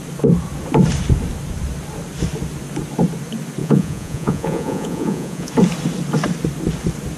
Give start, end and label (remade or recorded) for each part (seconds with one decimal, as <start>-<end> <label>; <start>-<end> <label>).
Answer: 0.0-3.6 recorded; 3.6-5.5 remade; 5.5-7.2 recorded

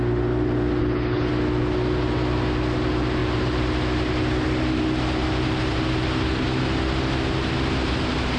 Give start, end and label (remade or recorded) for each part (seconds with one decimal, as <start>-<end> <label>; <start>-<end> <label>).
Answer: 0.0-0.8 recorded; 0.8-1.3 remade; 1.3-8.4 recorded

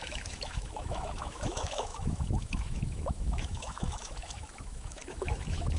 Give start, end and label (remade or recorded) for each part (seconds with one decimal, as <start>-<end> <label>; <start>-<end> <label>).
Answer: 0.0-5.8 remade

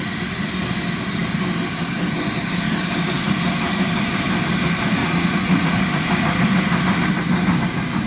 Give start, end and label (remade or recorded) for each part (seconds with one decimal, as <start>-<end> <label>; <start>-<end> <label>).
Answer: 0.0-5.0 recorded; 5.0-5.8 remade; 5.8-8.1 recorded

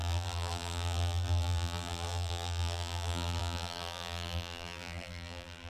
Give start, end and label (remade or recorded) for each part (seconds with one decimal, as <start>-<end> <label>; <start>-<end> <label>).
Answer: 0.0-5.7 remade